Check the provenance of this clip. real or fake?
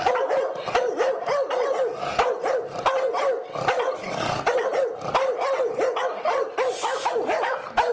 real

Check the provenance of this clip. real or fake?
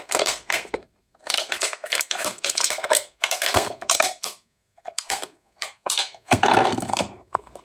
fake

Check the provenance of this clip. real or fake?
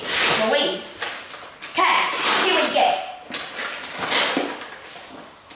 real